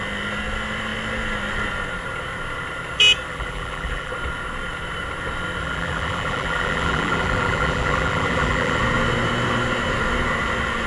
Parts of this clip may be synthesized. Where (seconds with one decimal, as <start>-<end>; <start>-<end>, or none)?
3.3-4.1; 5.6-8.8